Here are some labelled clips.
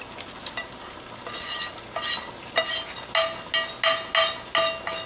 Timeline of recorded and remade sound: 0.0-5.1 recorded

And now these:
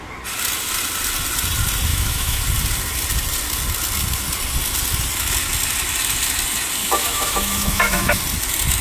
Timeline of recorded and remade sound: 0.0-1.9 recorded; 1.9-2.4 remade; 2.4-6.8 recorded; 6.8-8.2 remade; 8.2-8.8 recorded

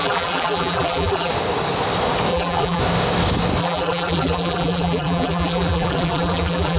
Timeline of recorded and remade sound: 0.0-1.3 remade; 1.3-2.3 recorded; 2.3-2.8 remade; 2.8-3.6 recorded; 3.6-6.8 remade